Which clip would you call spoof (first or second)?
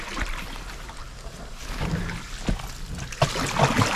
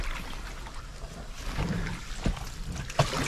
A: second